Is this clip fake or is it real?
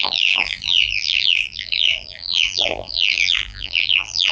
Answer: fake